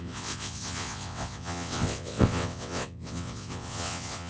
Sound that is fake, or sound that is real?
fake